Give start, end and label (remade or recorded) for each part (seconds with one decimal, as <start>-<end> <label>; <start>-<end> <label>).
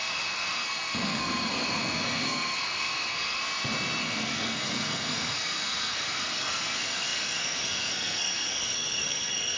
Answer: 0.0-3.4 remade; 3.4-4.0 recorded; 4.0-9.6 remade